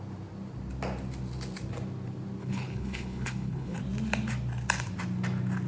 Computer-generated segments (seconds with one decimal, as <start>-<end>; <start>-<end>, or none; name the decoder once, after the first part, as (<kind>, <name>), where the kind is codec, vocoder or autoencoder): 2.4-3.8 (codec, HILCodec)

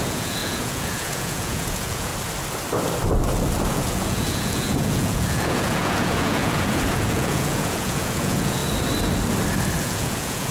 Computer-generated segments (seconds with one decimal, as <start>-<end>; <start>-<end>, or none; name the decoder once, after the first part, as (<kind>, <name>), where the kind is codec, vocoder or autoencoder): 0.0-2.1 (vocoder, Vocos); 3.7-8.6; 9.8-10.5

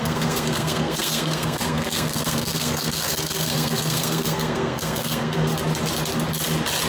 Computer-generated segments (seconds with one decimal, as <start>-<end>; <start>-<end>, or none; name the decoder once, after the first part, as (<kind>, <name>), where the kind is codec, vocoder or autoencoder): 0.0-5.5 (codec, SNAC)

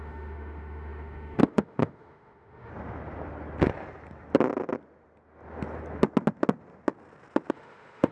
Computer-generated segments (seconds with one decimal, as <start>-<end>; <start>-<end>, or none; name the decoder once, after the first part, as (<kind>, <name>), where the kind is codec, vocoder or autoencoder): 0.0-2.7 (autoencoder, DAC-VAE); 7.5-8.1

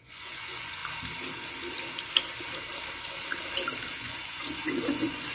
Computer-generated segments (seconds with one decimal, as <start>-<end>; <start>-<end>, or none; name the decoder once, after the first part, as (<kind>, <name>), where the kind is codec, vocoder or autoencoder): 0.0-0.8 (vocoder, Vocos); 4.0-5.3

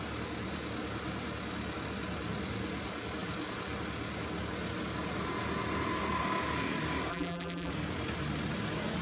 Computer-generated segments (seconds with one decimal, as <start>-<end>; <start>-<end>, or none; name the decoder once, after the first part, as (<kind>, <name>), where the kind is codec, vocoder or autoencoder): 7.1-7.7 (vocoder, BigVGAN v2)

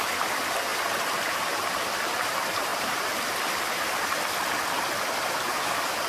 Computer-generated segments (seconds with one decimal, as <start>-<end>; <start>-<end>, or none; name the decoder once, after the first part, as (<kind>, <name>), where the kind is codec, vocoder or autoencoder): none

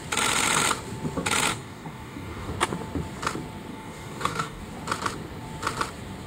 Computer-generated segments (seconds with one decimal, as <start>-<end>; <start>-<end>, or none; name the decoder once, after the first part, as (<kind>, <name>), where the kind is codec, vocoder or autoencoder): 1.5-2.5 (codec, DAC); 3.7-4.6